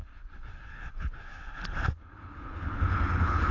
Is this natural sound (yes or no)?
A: no